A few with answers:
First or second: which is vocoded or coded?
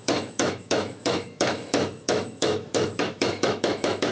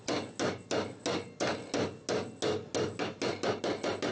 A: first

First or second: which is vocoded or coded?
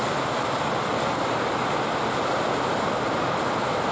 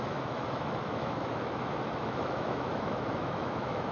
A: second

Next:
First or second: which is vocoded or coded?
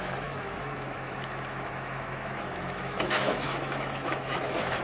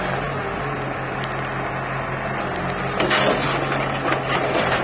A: first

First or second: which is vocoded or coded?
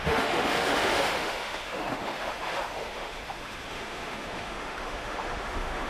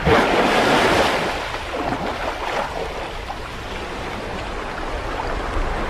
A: first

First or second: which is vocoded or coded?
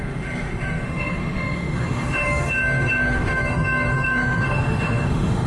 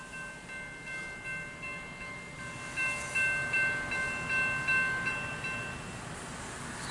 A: first